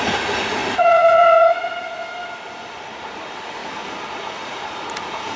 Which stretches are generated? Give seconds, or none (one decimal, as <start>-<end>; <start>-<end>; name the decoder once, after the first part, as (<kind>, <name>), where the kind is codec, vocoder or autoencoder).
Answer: 0.0-2.0 (vocoder, Vocos); 2.9-3.6; 4.1-5.4